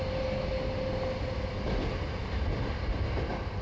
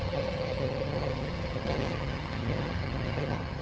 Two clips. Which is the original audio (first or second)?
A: first